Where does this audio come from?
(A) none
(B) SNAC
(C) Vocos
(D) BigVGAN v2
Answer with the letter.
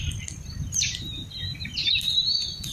A